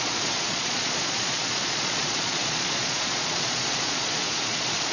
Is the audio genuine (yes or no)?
no